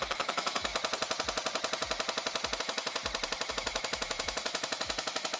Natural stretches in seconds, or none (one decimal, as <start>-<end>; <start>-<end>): 0.7-2.6; 3.0-3.5